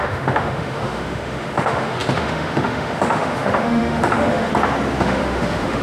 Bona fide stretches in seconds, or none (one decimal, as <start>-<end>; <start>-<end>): 4.5-5.0